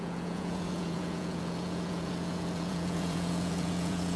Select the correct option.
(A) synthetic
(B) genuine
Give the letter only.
A